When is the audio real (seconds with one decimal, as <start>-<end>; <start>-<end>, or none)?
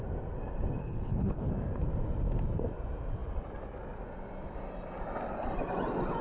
0.0-0.8; 1.5-6.2